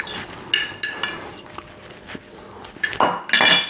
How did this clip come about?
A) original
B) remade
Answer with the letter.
A